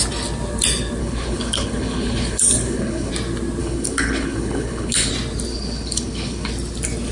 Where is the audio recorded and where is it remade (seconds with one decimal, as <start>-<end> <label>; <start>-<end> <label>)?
0.0-1.0 recorded; 1.0-3.1 remade; 3.1-3.6 recorded; 3.6-5.1 remade; 5.1-5.5 recorded; 5.5-6.5 remade; 6.5-7.1 recorded